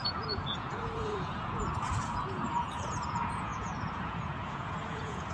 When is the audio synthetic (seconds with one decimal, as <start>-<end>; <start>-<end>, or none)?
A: 0.0-5.3

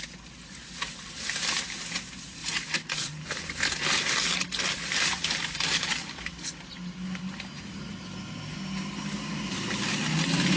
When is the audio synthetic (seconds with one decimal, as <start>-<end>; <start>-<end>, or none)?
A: 2.4-3.1

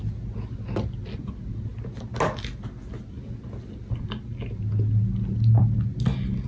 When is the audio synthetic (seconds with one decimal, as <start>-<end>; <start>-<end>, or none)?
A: none

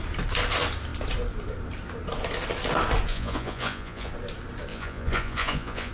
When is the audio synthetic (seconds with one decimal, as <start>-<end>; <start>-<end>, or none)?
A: 3.1-4.1; 4.7-5.9

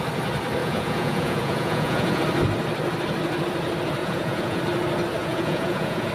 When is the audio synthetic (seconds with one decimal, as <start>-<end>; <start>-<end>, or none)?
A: 0.6-2.2; 4.0-4.6; 5.2-6.1

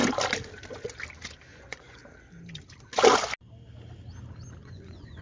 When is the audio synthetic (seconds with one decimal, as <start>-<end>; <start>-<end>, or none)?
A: 1.5-2.0; 4.6-5.2

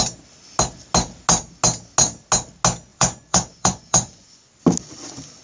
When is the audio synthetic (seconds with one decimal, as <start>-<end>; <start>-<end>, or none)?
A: 2.9-4.5

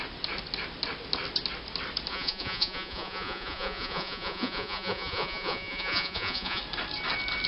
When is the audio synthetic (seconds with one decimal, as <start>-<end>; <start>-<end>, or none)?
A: 2.1-6.6